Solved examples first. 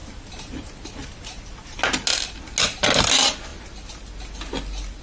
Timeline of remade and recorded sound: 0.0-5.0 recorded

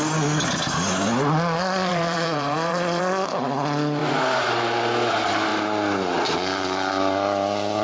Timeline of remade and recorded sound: 0.0-1.9 recorded; 1.9-3.0 remade; 3.0-4.0 recorded; 4.0-4.8 remade; 4.8-7.8 recorded

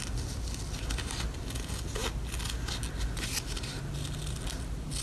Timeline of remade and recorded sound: 0.0-5.0 recorded

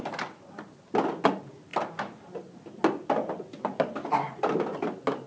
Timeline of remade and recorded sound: 0.0-5.3 recorded

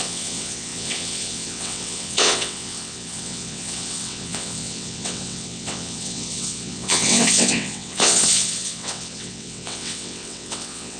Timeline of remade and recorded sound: 0.0-11.0 remade

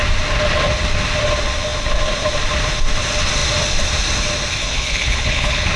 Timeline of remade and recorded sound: 0.0-4.6 recorded; 4.6-5.8 remade

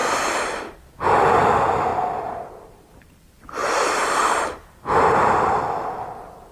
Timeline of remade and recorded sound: 0.0-0.6 remade; 0.6-1.9 recorded; 1.9-3.2 remade; 3.2-3.6 recorded; 3.6-5.6 remade; 5.6-6.5 recorded

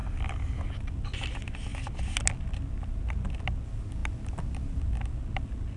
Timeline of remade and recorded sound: 0.0-5.8 recorded